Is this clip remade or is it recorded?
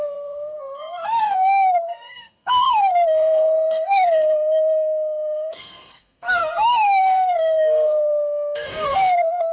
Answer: remade